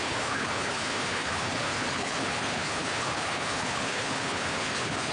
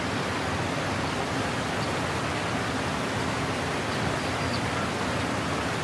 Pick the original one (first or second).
second